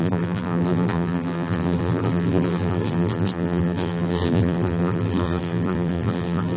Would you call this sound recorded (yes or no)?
no